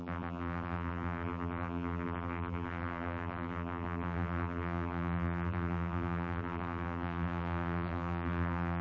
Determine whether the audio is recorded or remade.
remade